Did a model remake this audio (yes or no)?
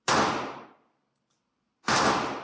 no